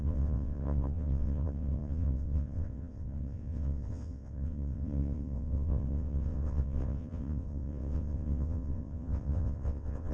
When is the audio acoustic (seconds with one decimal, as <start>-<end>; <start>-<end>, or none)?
none